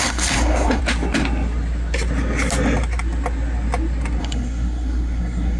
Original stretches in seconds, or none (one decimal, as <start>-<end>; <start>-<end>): 0.8-4.2